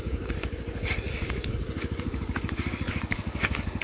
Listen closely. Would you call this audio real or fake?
fake